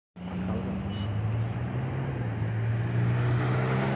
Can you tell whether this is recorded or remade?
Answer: recorded